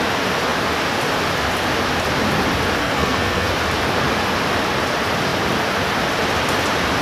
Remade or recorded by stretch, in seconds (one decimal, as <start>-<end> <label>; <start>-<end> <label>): 0.0-2.8 recorded; 2.8-3.5 remade; 3.5-7.0 recorded